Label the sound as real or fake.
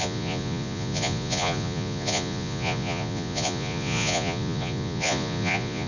fake